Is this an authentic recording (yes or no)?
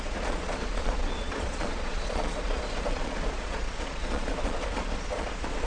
no